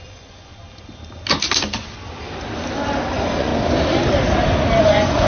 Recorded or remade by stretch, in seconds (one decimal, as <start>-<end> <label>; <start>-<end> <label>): 0.0-0.5 remade; 0.5-3.1 recorded; 3.1-3.5 remade; 3.5-4.8 recorded; 4.8-5.3 remade